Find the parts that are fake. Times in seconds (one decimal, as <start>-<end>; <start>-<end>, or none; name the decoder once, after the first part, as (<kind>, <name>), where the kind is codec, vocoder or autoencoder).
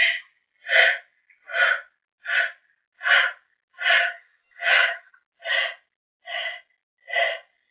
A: 4.0-5.1 (vocoder, HiFi-GAN)